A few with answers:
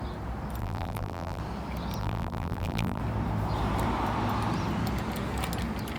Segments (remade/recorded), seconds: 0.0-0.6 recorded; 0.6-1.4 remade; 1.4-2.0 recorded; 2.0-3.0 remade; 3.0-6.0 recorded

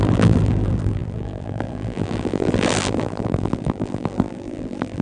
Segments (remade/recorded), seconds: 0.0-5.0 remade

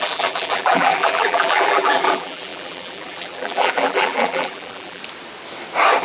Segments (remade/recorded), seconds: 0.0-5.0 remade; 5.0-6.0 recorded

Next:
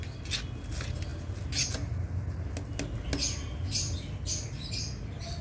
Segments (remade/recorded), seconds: 0.0-5.4 recorded

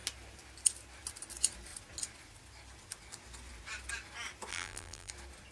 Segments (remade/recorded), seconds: 0.0-4.5 recorded; 4.5-5.1 remade; 5.1-5.5 recorded

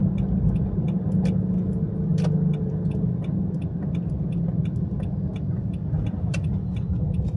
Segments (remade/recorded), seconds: 0.0-7.4 recorded

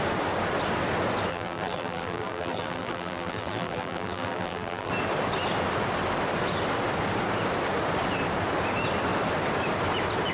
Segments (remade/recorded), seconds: 0.0-1.3 recorded; 1.3-4.9 remade; 4.9-10.3 recorded